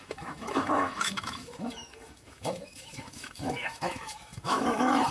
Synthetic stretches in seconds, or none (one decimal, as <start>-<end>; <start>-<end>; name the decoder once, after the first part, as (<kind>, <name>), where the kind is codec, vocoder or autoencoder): 0.0-5.1 (autoencoder, DAC-VAE)